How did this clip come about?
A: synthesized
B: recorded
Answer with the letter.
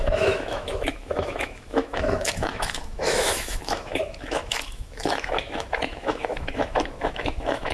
A